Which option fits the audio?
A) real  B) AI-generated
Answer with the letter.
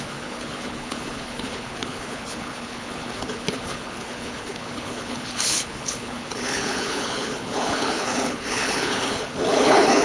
B